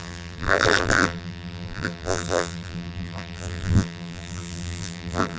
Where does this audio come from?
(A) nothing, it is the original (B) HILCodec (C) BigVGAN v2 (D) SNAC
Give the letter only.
C